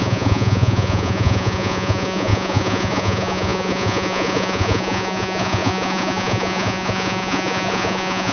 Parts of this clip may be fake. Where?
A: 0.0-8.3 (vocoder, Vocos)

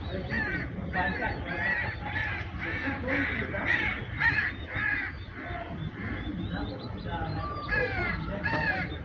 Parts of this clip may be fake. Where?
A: none

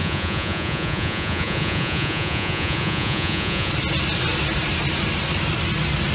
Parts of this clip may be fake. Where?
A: 0.0-3.7 (vocoder, Vocos)

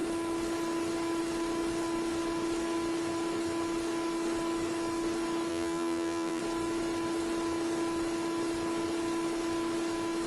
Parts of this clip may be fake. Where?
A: 5.5-6.4 (vocoder, BigVGAN v2)

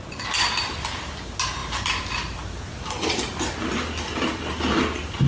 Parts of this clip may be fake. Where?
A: none

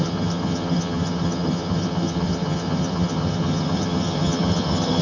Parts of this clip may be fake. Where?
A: 0.0-5.0 (vocoder, HiFi-GAN)